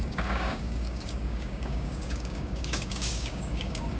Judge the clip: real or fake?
fake